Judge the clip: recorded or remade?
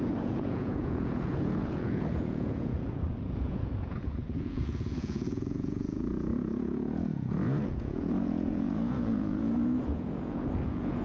remade